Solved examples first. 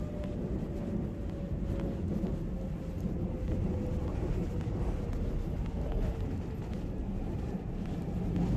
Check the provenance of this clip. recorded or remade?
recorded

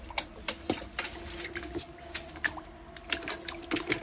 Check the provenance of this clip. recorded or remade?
recorded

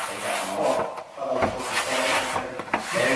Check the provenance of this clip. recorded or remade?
recorded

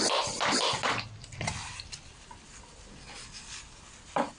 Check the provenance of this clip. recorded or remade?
recorded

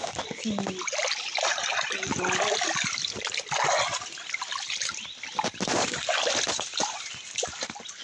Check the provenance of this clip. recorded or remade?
recorded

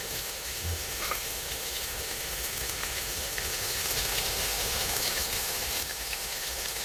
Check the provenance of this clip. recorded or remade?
remade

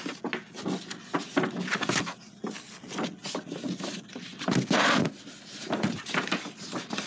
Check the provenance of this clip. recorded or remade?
recorded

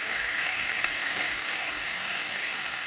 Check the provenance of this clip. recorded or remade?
remade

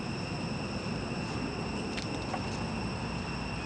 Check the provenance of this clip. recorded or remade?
recorded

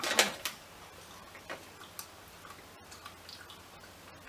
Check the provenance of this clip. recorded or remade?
recorded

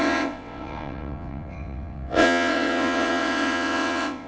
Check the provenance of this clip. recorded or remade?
remade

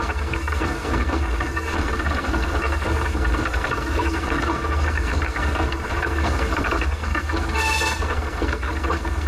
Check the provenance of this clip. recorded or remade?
remade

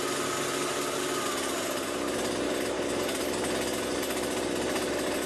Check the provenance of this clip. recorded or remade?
recorded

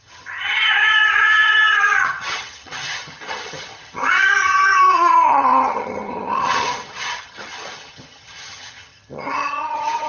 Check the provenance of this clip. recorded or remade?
remade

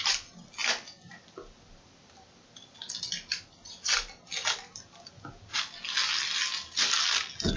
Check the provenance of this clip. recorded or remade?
recorded